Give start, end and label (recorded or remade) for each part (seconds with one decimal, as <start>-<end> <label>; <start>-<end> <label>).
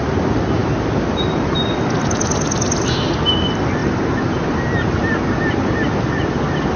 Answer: 0.0-6.8 recorded